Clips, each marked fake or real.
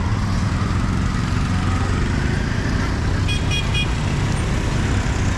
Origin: real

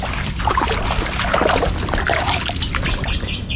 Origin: real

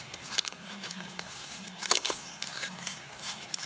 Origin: fake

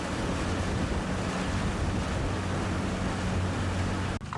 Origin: real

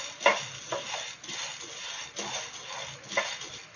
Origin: real